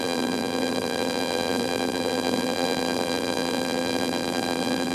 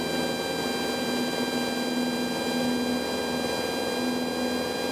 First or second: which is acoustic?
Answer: second